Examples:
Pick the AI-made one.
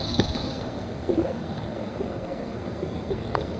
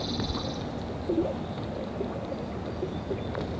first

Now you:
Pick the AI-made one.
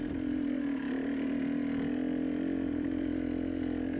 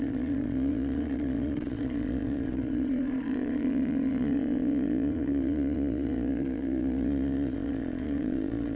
second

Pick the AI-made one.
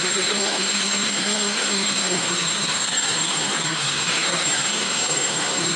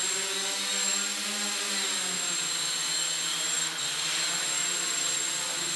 first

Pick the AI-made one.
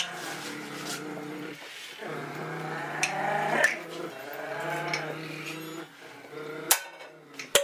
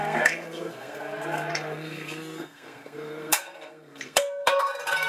second